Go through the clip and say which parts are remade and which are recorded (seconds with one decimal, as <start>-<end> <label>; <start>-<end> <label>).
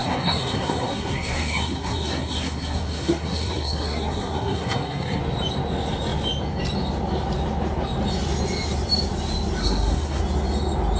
0.0-5.2 remade; 5.2-9.6 recorded; 9.6-10.2 remade; 10.2-11.0 recorded